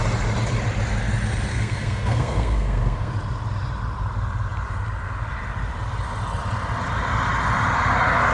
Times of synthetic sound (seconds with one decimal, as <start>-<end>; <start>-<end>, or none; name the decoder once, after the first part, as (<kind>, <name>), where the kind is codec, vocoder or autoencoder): 1.5-3.1 (codec, SNAC)